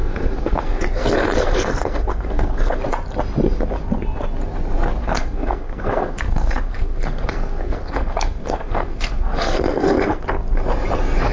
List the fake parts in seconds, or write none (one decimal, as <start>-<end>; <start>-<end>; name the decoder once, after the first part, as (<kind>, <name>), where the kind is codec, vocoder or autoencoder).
0.0-2.8 (codec, SNAC); 5.0-10.2